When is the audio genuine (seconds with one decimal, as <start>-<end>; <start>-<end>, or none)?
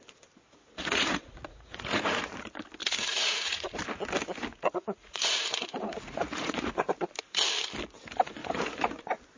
0.0-0.4; 2.3-2.8; 3.8-4.5; 6.9-8.4; 9.0-9.4